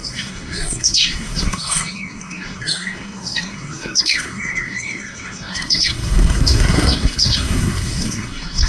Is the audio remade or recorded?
remade